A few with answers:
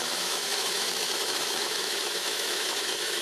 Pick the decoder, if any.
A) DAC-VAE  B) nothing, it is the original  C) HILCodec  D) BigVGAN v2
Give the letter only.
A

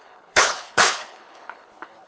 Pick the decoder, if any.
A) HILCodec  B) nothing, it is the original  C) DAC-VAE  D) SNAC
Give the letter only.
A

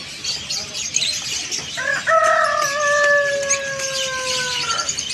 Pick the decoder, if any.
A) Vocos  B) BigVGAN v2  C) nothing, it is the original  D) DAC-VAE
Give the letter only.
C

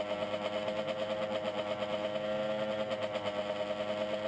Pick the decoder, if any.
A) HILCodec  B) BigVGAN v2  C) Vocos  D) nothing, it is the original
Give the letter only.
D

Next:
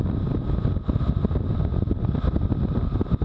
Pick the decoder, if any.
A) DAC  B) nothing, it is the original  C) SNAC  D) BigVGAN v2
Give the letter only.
B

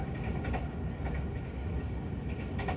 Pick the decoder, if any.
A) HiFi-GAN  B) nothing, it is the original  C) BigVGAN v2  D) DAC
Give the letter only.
B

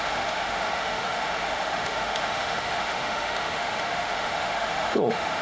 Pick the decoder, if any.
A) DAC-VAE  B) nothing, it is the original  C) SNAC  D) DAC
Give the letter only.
A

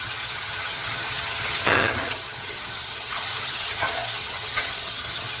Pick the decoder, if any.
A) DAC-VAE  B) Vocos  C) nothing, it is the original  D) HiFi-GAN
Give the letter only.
D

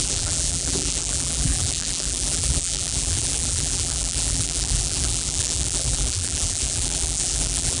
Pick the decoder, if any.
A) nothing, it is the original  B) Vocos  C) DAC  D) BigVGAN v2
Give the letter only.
D